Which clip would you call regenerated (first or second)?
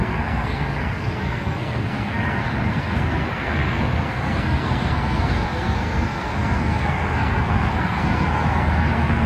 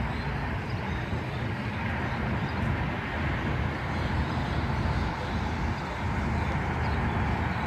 first